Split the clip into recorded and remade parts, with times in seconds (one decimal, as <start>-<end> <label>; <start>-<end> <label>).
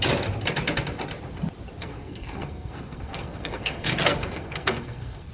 0.0-1.8 recorded; 1.8-5.3 remade